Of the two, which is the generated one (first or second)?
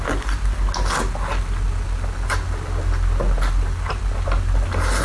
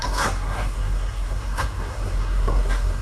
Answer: second